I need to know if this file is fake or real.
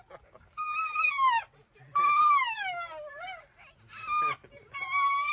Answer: real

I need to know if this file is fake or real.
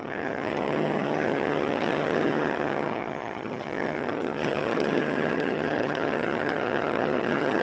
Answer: fake